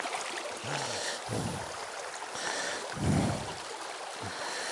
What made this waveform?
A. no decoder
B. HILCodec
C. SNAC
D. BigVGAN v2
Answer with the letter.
A